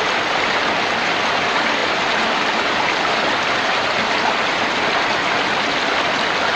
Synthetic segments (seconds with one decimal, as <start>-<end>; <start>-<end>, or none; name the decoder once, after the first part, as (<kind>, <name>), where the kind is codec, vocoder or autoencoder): none